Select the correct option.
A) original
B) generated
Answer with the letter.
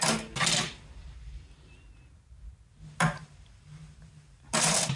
A